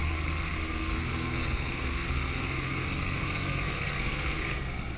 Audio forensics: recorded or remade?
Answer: remade